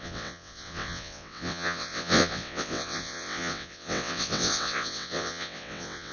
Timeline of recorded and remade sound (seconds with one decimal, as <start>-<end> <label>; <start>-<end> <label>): 0.0-6.1 remade